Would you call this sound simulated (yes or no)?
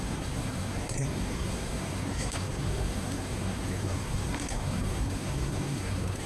yes